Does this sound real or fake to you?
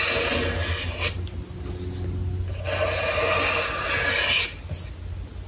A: real